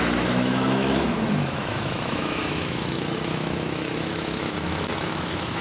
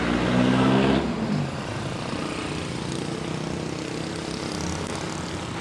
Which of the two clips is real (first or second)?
second